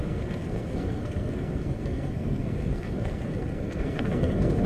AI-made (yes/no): yes